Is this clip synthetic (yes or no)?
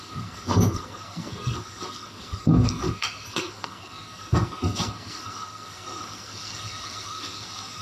yes